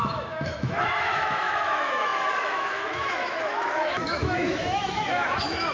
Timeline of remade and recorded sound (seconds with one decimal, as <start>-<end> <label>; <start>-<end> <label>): 0.0-5.7 remade

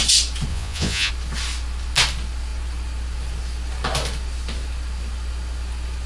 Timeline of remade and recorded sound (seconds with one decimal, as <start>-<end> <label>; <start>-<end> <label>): 0.0-0.5 recorded; 0.5-1.1 remade; 1.1-6.1 recorded